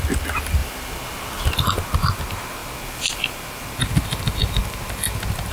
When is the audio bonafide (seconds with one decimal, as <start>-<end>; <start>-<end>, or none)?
0.0-5.5